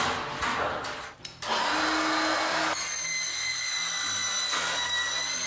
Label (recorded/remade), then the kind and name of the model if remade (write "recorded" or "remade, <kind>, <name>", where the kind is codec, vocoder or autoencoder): recorded